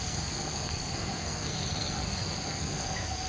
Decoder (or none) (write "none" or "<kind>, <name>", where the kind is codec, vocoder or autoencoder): codec, SNAC